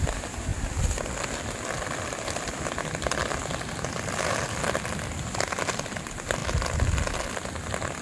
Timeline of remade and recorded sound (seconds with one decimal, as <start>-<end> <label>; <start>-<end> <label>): 0.0-8.0 recorded